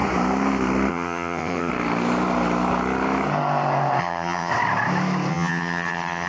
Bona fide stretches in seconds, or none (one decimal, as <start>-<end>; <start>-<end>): 0.0-0.9; 1.7-4.0; 4.5-5.3